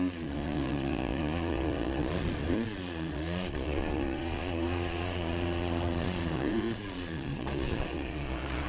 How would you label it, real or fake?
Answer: fake